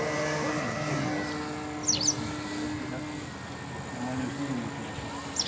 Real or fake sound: real